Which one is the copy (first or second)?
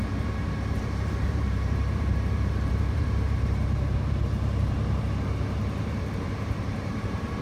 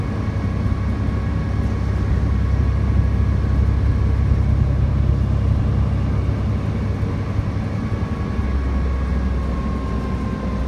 first